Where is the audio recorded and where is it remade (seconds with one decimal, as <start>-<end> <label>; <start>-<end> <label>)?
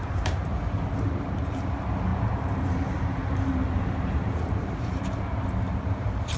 0.0-6.4 remade